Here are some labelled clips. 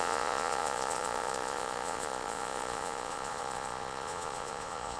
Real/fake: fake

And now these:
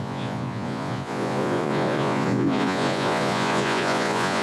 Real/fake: fake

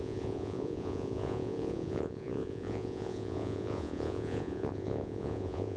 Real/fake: fake